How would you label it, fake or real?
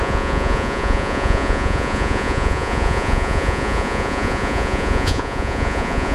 fake